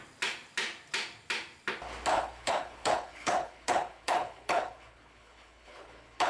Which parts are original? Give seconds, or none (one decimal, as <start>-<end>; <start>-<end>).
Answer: 0.0-2.1